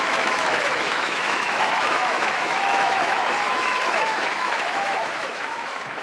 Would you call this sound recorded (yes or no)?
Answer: no